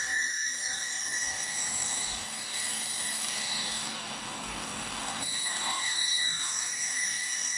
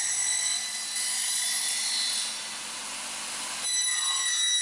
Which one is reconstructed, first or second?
first